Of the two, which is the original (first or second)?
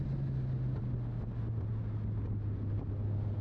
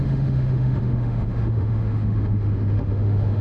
first